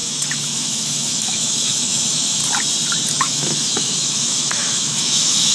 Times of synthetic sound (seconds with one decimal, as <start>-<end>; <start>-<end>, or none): 0.0-2.4; 3.1-5.5